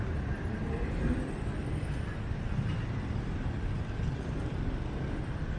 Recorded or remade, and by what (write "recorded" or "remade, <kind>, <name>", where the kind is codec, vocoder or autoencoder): recorded